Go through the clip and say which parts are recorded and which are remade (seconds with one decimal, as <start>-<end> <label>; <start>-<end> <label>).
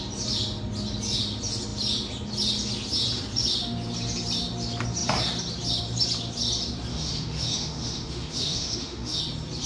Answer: 0.0-6.9 recorded; 6.9-9.2 remade; 9.2-9.7 recorded